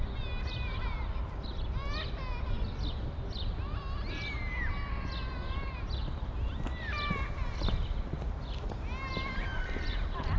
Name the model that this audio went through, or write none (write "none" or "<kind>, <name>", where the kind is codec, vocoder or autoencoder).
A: none